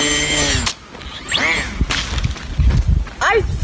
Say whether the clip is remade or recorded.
recorded